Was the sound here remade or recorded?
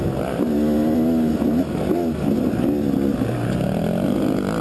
recorded